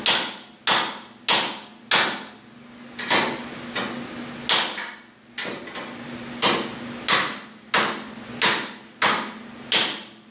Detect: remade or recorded recorded